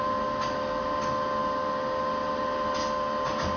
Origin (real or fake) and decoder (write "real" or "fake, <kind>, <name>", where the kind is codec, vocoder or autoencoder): real